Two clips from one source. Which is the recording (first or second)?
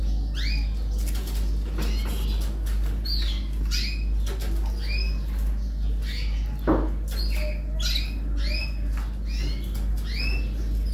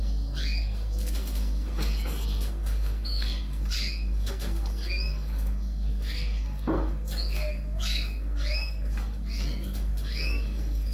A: first